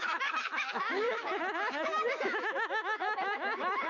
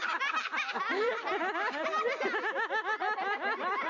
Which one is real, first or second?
second